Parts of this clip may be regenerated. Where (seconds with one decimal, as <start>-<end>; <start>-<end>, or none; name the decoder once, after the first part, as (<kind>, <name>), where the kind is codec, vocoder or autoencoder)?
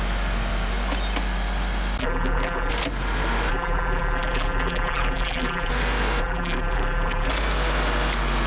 2.0-2.7 (vocoder, BigVGAN v2); 3.5-5.7; 6.2-7.3